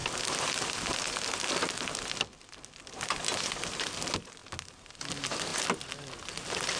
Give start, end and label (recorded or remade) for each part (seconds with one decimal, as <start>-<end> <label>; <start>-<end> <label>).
0.0-6.8 recorded